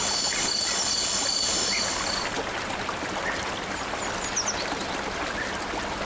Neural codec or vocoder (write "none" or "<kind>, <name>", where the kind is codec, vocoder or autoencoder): none